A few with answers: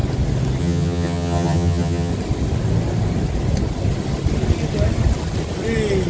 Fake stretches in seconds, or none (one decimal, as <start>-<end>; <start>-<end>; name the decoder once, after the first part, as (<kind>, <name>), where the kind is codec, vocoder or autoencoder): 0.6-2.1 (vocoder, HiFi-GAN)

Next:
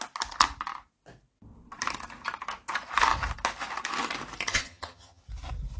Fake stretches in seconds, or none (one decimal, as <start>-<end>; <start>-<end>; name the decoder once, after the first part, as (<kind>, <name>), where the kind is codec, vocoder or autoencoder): 4.5-5.2 (vocoder, HiFi-GAN)

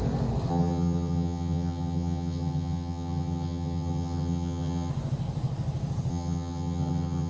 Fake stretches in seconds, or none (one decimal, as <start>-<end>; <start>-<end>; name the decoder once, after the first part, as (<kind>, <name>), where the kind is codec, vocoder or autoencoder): 0.5-4.9 (vocoder, HiFi-GAN); 6.1-7.3